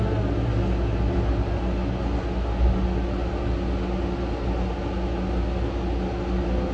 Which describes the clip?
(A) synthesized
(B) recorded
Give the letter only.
B